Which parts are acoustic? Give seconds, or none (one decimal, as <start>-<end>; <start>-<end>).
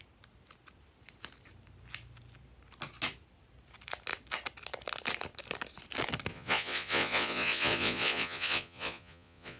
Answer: 0.0-6.3